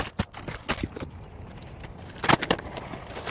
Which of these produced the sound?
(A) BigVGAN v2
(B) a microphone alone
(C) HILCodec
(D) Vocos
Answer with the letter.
B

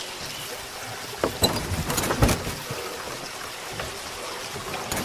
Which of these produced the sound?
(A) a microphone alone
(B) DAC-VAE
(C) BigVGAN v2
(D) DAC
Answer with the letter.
A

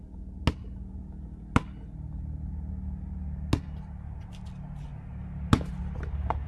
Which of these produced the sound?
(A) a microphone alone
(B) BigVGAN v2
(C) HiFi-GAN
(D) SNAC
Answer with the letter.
A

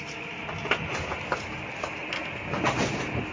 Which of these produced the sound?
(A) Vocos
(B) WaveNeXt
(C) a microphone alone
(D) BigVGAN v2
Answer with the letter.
C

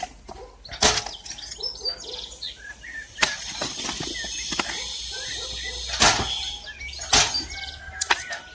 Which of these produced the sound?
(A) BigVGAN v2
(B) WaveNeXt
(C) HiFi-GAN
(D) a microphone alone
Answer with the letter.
D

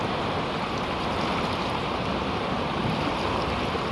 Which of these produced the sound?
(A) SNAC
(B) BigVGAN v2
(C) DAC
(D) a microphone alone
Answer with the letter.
B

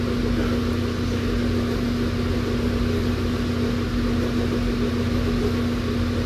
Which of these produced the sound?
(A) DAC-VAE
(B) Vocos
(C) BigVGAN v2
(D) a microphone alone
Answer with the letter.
D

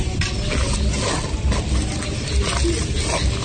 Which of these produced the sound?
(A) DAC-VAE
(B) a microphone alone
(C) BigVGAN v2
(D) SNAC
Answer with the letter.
B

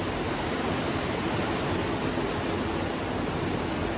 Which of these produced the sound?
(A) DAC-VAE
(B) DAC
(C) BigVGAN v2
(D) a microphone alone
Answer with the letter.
D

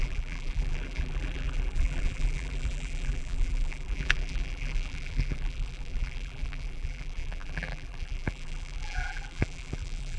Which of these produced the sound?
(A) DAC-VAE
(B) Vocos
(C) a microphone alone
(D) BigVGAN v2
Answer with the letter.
D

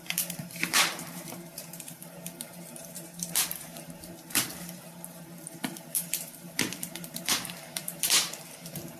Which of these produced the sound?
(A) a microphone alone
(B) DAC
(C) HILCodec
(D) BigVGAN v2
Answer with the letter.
D